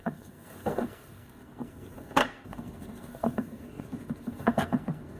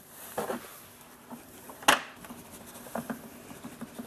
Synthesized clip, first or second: first